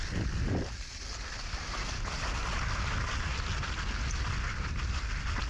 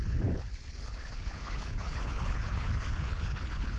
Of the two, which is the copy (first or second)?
second